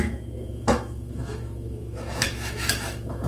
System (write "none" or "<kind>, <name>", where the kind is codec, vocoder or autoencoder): autoencoder, DAC-VAE